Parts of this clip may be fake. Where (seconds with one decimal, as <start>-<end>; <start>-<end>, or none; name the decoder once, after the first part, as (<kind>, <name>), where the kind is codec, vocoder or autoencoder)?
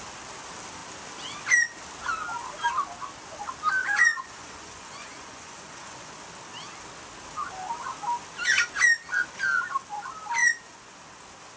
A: 3.8-6.1 (vocoder, Vocos); 10.4-11.0